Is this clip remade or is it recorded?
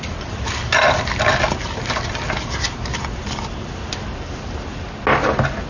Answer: recorded